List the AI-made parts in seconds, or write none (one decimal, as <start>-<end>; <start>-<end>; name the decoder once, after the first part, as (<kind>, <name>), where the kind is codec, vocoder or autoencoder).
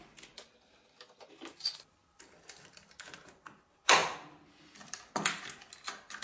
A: none